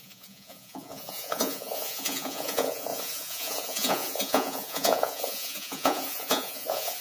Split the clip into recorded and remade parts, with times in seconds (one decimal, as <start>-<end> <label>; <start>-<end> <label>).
0.0-7.0 remade